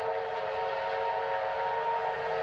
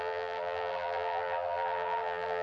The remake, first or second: second